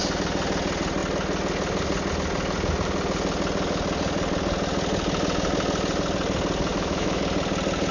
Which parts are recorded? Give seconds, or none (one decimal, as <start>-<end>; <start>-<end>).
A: 0.0-6.7; 7.2-7.9